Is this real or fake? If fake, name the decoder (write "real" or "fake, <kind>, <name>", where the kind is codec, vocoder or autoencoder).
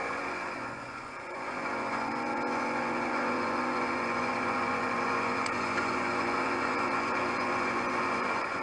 fake, vocoder, Vocos